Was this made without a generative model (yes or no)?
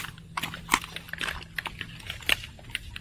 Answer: yes